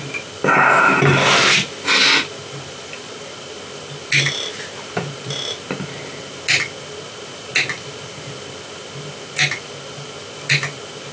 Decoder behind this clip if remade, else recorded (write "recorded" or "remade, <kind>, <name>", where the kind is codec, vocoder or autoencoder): recorded